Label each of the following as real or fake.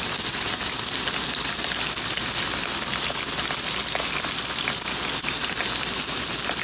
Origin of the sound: real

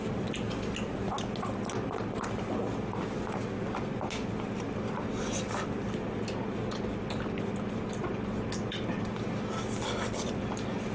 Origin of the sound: real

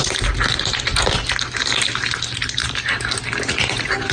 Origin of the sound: real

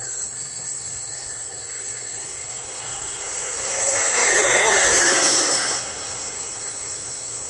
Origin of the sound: fake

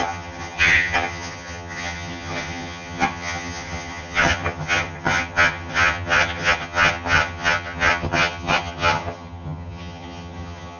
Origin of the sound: fake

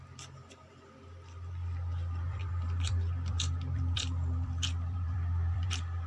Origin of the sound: fake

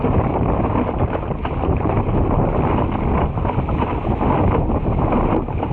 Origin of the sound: real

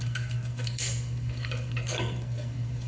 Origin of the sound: fake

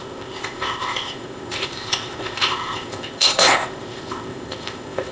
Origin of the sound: fake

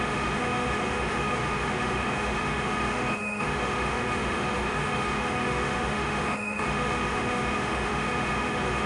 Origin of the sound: fake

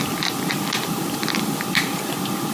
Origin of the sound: fake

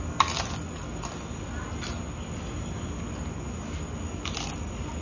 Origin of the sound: real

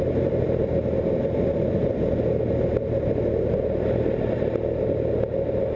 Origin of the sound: real